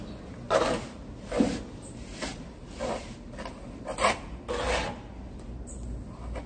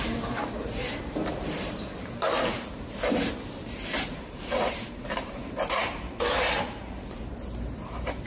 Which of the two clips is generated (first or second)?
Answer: second